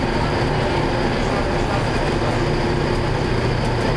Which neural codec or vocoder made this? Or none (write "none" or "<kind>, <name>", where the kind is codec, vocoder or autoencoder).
none